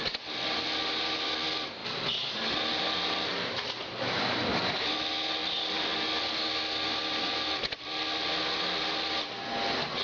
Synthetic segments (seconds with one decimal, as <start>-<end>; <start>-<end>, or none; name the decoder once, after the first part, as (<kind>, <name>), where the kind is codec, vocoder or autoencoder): 1.8-4.2 (vocoder, BigVGAN v2); 5.4-6.1